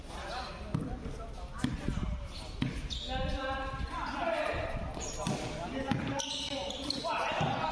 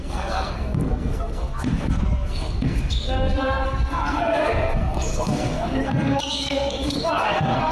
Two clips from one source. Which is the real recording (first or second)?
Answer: first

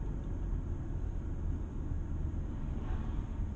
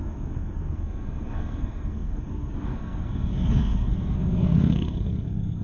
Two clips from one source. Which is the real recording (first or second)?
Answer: first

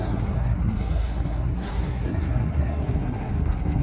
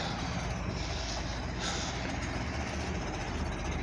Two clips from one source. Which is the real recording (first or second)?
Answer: second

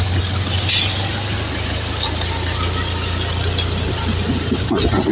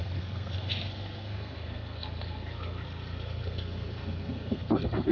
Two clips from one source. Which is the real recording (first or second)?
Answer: first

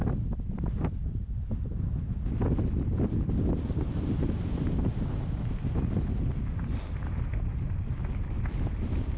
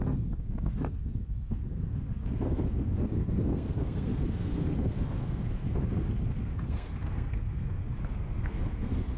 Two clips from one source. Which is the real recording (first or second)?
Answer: first